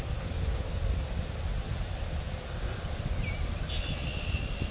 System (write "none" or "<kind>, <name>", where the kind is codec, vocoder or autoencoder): none